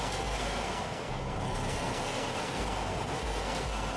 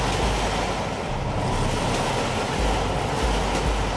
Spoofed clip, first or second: first